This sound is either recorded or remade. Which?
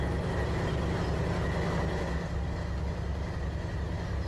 recorded